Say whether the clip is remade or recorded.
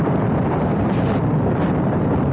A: recorded